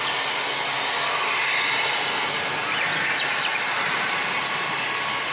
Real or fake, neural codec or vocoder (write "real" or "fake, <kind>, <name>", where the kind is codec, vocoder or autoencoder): real